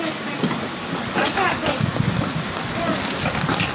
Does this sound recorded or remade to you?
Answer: recorded